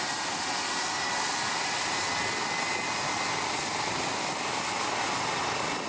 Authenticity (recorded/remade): recorded